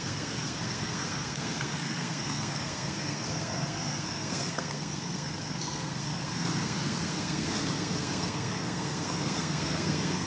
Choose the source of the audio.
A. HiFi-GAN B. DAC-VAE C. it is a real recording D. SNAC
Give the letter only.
D